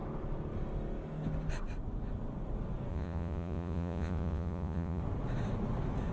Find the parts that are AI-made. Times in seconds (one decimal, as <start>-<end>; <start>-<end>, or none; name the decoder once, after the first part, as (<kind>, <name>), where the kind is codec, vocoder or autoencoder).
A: 2.9-5.0 (vocoder, Vocos)